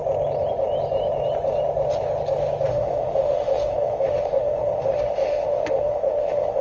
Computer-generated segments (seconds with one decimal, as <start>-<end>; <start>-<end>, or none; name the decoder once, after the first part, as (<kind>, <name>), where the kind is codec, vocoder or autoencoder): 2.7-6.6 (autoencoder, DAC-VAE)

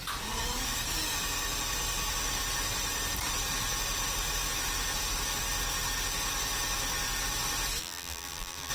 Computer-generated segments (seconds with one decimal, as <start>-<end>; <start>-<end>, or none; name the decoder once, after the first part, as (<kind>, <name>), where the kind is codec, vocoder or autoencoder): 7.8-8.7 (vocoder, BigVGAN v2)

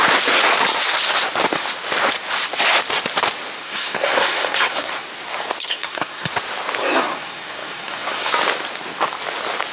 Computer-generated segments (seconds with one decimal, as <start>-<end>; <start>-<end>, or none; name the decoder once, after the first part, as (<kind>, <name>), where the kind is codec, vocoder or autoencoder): 3.6-4.9 (codec, SNAC); 5.6-6.3; 6.8-8.3

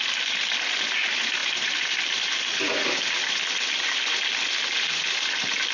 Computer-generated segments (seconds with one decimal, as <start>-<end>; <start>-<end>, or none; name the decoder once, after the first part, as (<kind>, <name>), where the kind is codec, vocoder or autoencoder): none

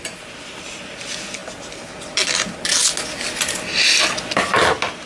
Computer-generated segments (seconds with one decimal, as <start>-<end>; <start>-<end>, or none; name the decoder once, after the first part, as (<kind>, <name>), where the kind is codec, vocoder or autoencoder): none

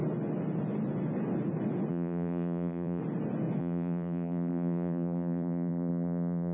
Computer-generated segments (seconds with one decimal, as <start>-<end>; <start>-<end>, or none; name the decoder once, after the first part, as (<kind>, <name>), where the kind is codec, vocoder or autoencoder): 1.9-3.0 (vocoder, BigVGAN v2); 3.6-6.5